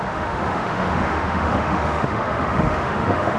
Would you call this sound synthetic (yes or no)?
yes